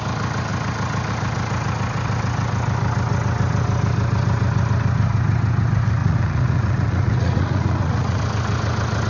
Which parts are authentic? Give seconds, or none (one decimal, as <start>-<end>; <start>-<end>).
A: 0.0-6.0; 8.2-9.1